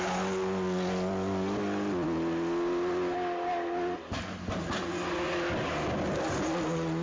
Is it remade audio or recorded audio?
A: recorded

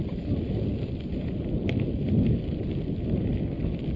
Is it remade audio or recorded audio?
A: recorded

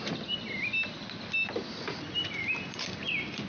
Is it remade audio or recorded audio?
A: recorded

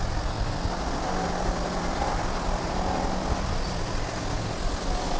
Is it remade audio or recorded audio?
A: recorded